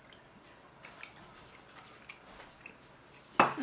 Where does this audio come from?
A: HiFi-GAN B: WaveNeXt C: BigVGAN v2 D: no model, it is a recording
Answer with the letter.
D